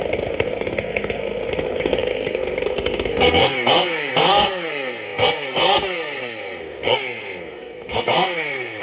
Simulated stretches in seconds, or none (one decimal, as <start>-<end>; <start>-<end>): 0.0-8.8